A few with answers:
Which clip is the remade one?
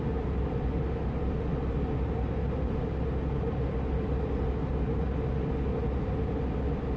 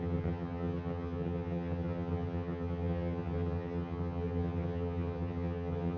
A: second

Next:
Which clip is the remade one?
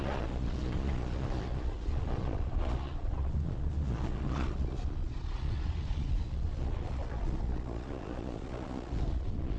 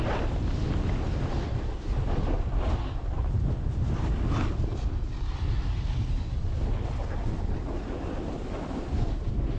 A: first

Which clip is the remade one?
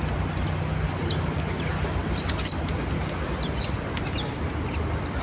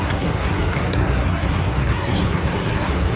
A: second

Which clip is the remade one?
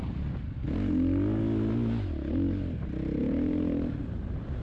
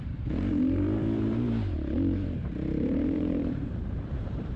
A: second